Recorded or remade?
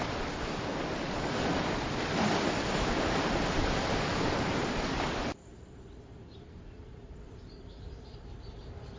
remade